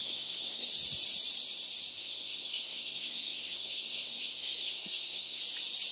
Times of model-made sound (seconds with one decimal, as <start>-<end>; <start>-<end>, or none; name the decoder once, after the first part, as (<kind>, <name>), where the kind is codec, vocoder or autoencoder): 0.0-0.7 (codec, SNAC); 1.9-5.4